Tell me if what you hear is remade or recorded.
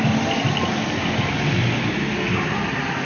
recorded